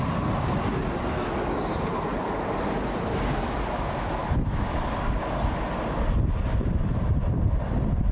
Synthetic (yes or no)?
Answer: no